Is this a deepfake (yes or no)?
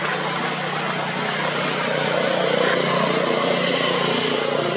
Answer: no